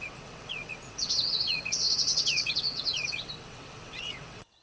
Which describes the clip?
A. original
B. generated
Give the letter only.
B